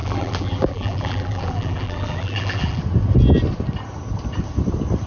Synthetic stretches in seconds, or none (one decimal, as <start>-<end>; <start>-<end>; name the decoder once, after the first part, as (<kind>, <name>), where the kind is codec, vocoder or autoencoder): 0.0-2.8 (vocoder, BigVGAN v2)